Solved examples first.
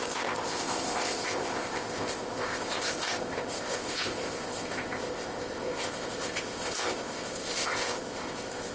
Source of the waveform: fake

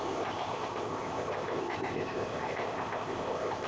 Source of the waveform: fake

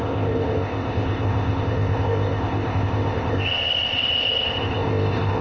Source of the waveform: fake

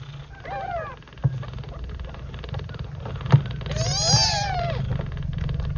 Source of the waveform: real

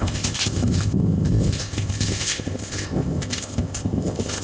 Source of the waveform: fake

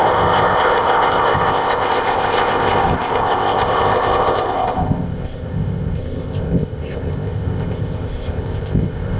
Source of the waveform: fake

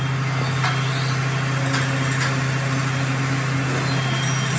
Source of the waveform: real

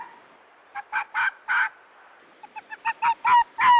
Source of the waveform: real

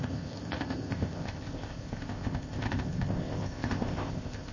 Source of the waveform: fake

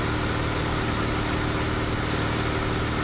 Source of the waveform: real